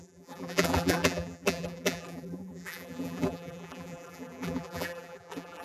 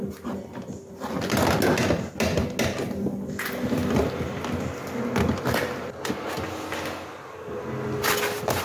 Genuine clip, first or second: second